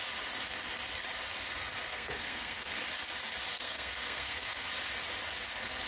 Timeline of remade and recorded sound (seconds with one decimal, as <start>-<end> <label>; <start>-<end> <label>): 0.0-1.8 recorded; 1.8-2.7 remade; 2.7-3.5 recorded; 3.5-4.7 remade; 4.7-5.9 recorded